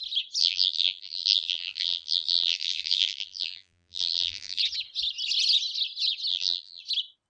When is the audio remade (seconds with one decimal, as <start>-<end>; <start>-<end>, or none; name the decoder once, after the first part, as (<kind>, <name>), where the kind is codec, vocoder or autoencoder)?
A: 0.4-4.6 (vocoder, BigVGAN v2); 6.3-6.8